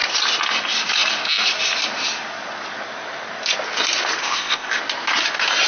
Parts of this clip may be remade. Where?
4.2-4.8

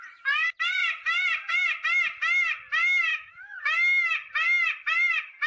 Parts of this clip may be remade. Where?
3.1-3.6

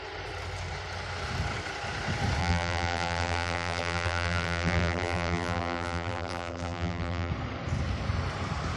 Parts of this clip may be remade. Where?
2.4-7.3

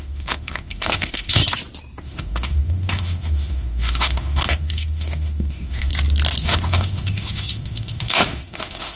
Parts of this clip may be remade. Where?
0.0-1.4; 2.0-5.9; 6.4-9.0

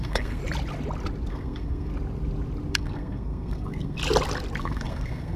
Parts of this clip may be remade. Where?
0.0-0.4; 1.3-1.9; 2.7-4.0; 4.6-5.4

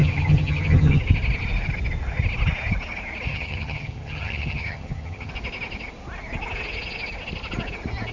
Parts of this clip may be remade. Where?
0.0-1.0; 3.3-5.3